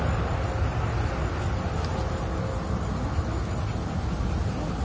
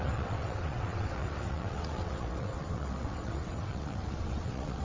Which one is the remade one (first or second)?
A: second